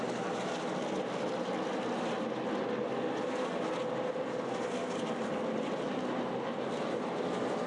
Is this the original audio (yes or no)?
yes